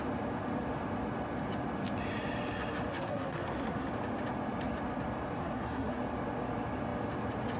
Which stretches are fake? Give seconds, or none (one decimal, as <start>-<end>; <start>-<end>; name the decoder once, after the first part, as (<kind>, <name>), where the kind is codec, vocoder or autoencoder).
2.9-3.9 (codec, SNAC); 5.4-6.0